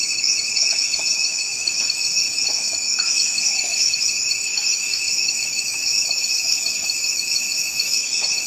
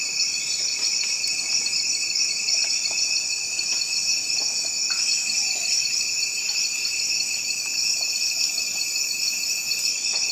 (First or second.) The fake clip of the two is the first